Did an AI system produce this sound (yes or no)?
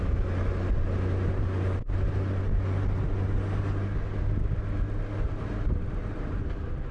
no